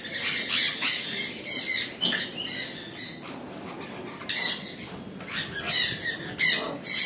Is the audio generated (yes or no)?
no